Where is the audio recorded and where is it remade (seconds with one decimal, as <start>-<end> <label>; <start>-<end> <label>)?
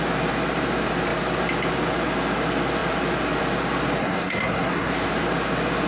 0.0-4.0 recorded; 4.0-4.9 remade; 4.9-5.9 recorded